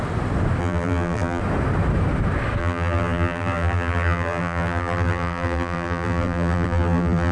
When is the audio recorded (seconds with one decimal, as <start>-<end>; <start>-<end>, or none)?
0.0-0.6; 1.4-2.6